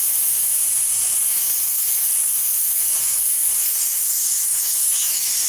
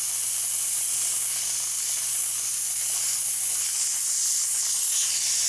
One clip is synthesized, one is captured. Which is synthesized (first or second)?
first